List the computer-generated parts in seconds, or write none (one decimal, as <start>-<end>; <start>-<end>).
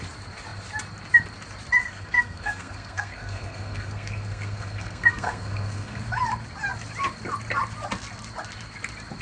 1.8-6.0